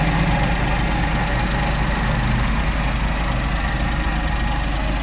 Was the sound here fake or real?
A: real